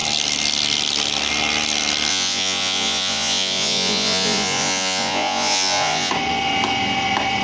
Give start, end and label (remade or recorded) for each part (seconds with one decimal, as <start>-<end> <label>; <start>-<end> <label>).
0.0-2.1 recorded; 2.1-6.1 remade; 6.1-7.4 recorded